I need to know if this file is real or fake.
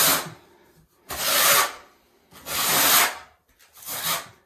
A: real